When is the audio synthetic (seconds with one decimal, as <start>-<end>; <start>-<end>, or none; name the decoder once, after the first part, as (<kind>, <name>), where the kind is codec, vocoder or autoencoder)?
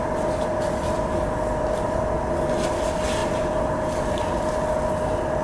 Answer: 3.2-4.2 (vocoder, BigVGAN v2)